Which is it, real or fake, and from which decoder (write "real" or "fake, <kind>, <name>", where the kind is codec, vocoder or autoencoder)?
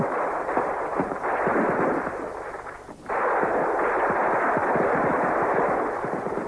fake, vocoder, BigVGAN v2